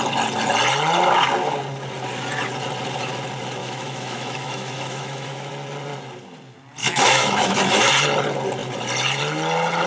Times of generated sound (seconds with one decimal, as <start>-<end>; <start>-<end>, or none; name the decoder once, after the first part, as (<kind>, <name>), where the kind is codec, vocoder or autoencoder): 3.6-5.5 (autoencoder, DAC-VAE); 6.8-7.9

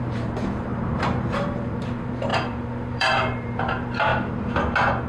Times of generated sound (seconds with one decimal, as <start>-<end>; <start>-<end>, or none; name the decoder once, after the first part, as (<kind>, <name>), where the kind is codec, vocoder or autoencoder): 0.0-4.1 (vocoder, BigVGAN v2)

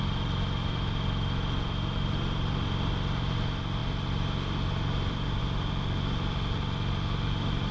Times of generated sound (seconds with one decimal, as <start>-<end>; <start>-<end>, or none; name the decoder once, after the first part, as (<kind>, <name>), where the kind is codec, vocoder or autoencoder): none

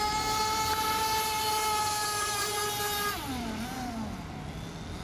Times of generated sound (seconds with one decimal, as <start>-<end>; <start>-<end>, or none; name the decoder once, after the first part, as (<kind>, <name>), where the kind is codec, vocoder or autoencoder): none